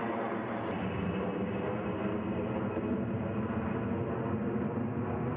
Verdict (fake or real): real